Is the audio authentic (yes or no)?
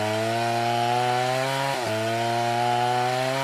yes